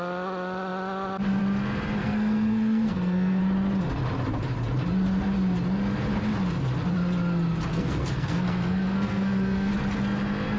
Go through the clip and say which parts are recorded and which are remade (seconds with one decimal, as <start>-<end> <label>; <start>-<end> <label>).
0.0-2.0 recorded; 2.0-3.4 remade; 3.4-7.7 recorded; 7.7-9.7 remade; 9.7-10.6 recorded